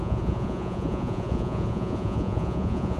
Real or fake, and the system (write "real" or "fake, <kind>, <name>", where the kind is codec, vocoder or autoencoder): fake, vocoder, Vocos